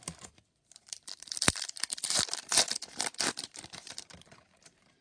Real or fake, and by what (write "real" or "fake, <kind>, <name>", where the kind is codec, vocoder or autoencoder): fake, vocoder, BigVGAN v2